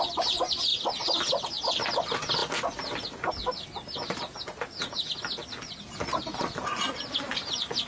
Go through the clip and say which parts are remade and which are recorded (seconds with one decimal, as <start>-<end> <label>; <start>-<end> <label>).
0.0-2.4 recorded; 2.4-3.3 remade; 3.3-7.9 recorded